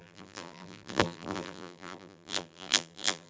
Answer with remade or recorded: remade